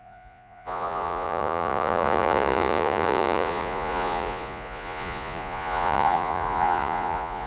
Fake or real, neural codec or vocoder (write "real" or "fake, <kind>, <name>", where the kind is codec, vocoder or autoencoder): fake, vocoder, Vocos